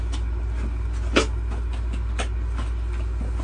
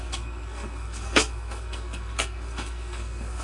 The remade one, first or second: second